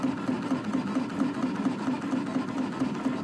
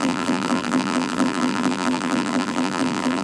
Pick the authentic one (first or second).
first